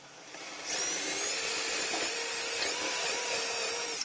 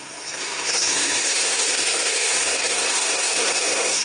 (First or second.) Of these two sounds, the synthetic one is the second